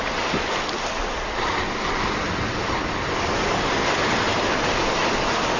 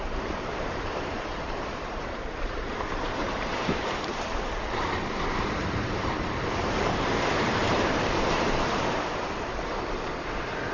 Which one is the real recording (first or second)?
first